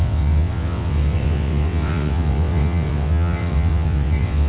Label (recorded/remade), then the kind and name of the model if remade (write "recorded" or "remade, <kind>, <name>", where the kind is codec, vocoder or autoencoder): remade, vocoder, WaveNeXt